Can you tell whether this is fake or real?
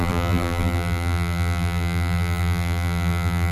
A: fake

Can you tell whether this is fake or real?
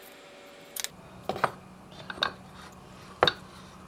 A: real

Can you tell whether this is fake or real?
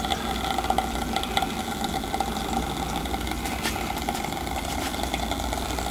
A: real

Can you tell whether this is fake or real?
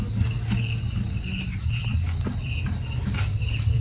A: real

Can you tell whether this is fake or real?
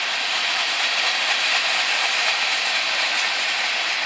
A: fake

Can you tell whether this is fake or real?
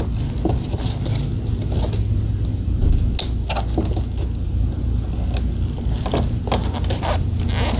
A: real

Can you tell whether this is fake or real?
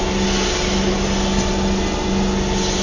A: real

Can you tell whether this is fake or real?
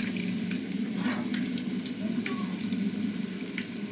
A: real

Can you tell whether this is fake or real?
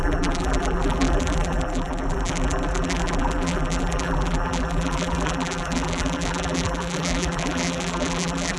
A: fake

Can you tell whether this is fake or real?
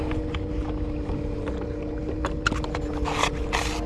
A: real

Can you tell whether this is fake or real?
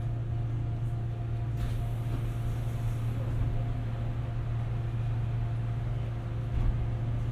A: real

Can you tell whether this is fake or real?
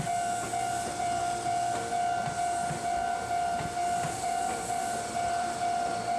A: fake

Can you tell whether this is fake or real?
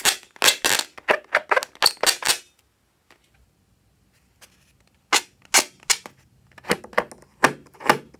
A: real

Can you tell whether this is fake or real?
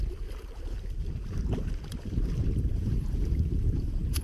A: fake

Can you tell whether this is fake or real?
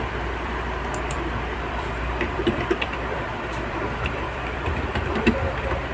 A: fake